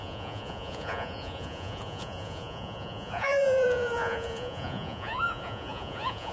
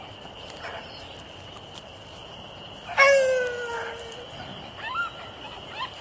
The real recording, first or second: second